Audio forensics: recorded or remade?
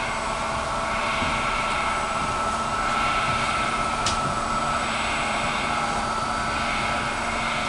remade